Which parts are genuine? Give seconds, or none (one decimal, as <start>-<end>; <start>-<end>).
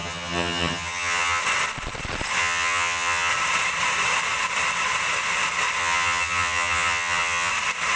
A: 1.4-2.4; 3.3-5.8; 7.5-8.0